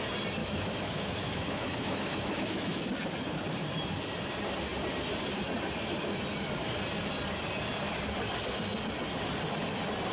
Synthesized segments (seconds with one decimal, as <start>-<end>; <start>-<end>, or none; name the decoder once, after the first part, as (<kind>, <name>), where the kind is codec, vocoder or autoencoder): 0.4-2.8 (autoencoder, DAC-VAE)